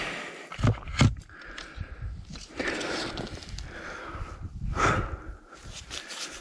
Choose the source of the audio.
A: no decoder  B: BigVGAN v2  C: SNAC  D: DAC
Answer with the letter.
A